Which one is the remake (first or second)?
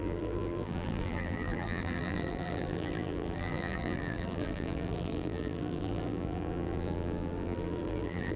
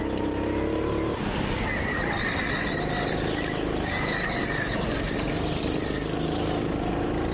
first